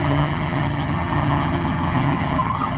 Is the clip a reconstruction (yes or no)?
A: yes